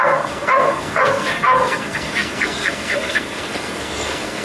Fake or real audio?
fake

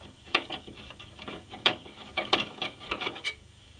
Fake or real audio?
fake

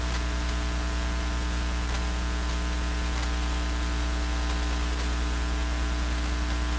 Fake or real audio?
real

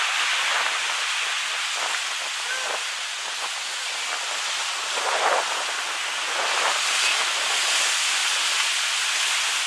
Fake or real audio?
real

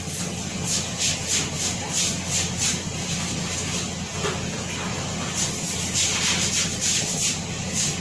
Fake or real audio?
real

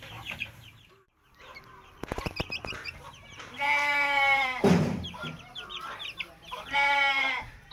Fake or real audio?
fake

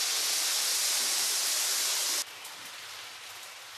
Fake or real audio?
real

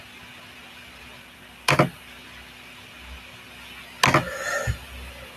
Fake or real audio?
real